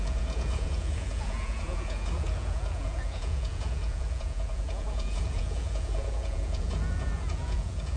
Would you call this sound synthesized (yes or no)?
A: yes